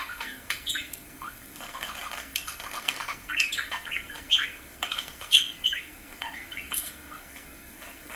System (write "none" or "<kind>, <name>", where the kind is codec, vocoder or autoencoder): codec, SNAC